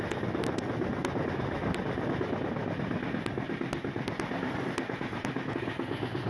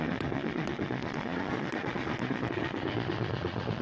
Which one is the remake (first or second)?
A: second